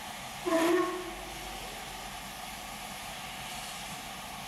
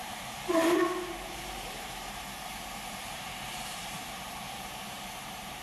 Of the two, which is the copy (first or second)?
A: second